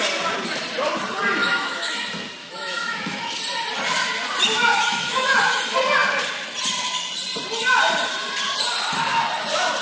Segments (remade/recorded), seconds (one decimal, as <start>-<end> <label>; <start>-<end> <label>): 0.0-1.4 recorded; 1.4-2.0 remade; 2.0-2.4 recorded; 2.4-3.3 remade; 3.3-4.7 recorded; 4.7-5.6 remade; 5.6-9.8 recorded